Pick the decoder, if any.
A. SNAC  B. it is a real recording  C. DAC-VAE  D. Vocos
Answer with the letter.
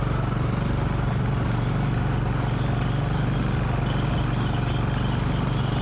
B